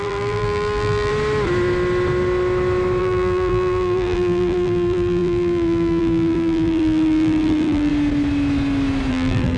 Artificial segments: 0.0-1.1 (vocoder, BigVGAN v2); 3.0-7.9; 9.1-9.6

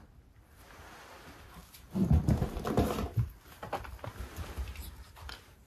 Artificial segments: 1.6-2.3 (vocoder, BigVGAN v2); 3.0-4.2

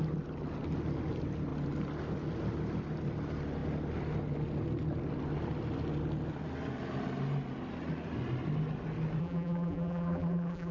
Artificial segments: 9.2-10.7 (vocoder, BigVGAN v2)

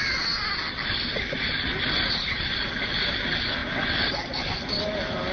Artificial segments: none

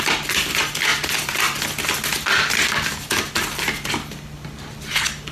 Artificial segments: 0.9-1.6 (vocoder, BigVGAN v2)

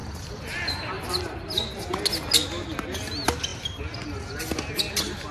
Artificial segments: 0.0-1.2 (vocoder, BigVGAN v2)

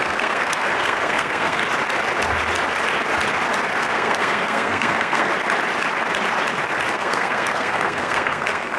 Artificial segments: 0.0-1.6 (codec, SNAC); 3.8-5.3; 6.9-8.8